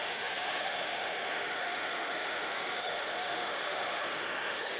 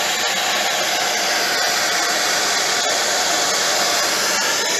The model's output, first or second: first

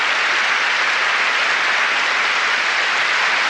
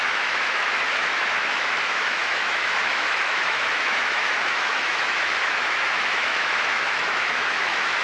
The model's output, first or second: second